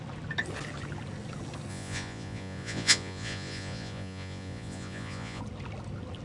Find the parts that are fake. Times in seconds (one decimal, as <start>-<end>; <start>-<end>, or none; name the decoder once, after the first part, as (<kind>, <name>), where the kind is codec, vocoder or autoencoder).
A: 1.7-5.4 (vocoder, Vocos)